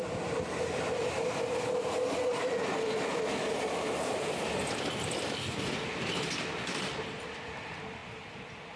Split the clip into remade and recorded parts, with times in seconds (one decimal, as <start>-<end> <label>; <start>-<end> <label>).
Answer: 0.0-8.8 recorded